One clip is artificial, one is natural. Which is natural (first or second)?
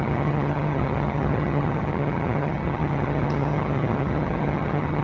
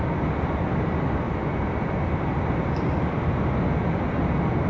second